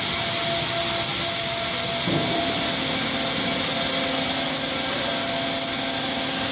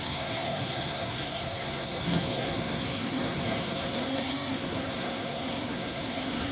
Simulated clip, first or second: second